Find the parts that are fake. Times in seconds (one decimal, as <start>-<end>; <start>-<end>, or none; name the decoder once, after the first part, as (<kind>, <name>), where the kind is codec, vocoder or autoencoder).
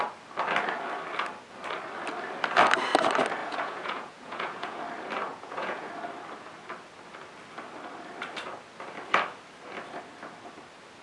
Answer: 3.4-4.8 (vocoder, Vocos); 5.3-5.9